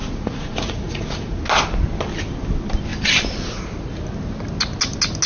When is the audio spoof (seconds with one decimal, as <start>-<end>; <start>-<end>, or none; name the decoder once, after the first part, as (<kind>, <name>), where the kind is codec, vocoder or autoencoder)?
0.0-1.4 (vocoder, Vocos)